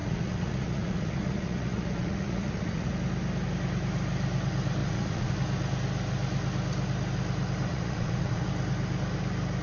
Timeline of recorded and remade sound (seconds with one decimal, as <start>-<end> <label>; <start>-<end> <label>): 0.0-2.9 remade; 2.9-4.8 recorded; 4.8-5.3 remade; 5.3-7.7 recorded; 7.7-8.5 remade; 8.5-9.6 recorded